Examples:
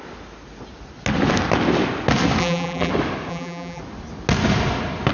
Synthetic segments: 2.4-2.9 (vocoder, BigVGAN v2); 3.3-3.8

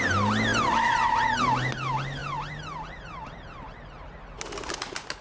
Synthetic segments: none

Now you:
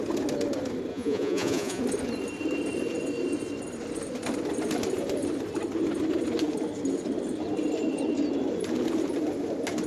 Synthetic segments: 0.9-1.8 (vocoder, Vocos)

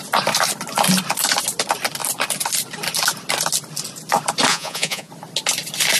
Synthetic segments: 4.5-5.1 (vocoder, Vocos)

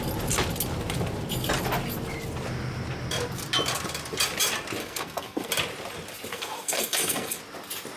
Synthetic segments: 4.8-5.5 (codec, SNAC); 6.3-7.4